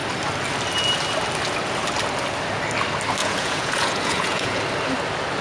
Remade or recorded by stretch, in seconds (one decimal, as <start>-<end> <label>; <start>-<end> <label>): 0.0-3.2 recorded; 3.2-4.6 remade; 4.6-5.4 recorded